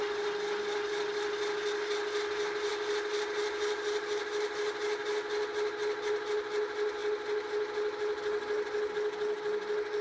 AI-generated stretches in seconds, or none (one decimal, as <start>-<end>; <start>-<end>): none